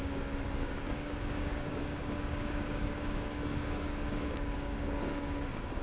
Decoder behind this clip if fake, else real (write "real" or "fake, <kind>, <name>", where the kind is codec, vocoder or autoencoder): fake, codec, DAC